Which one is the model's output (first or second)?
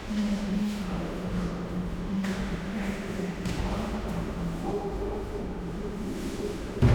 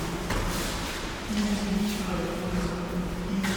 first